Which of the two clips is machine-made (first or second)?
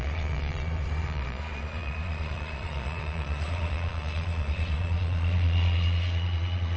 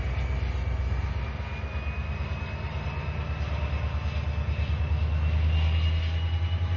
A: first